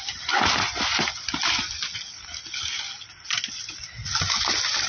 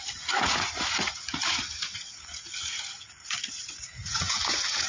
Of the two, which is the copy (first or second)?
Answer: second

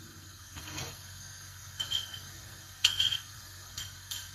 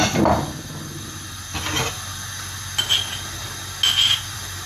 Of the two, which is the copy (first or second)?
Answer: first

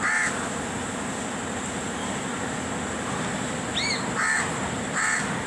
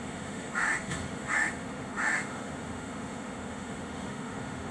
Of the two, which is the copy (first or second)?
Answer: second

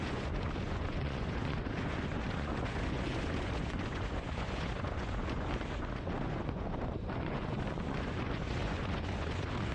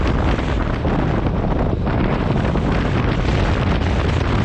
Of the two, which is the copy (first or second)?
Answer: first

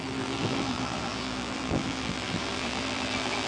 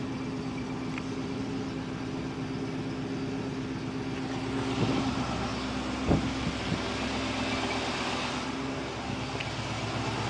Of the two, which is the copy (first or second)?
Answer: first